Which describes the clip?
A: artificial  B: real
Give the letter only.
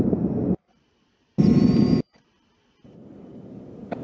B